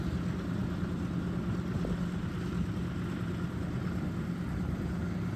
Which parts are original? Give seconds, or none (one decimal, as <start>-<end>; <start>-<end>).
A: 0.0-5.4